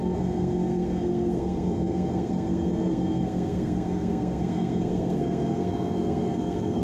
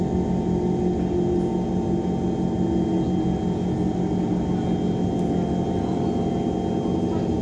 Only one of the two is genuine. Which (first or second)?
second